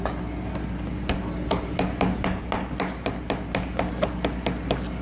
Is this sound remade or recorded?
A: recorded